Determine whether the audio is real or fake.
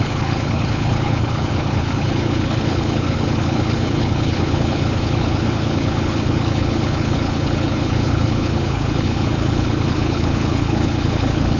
fake